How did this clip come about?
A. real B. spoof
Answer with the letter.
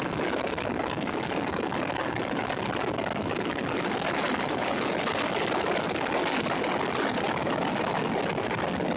A